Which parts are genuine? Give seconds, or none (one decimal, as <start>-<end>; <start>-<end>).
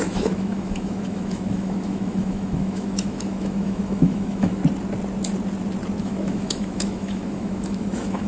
4.6-6.0